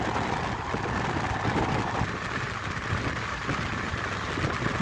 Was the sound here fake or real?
real